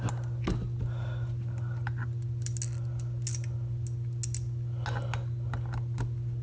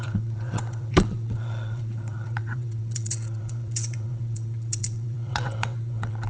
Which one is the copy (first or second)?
second